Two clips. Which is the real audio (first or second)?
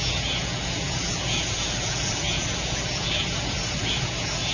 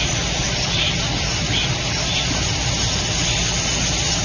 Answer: second